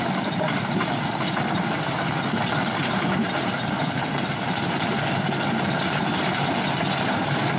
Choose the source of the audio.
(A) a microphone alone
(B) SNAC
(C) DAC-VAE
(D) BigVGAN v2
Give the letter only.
A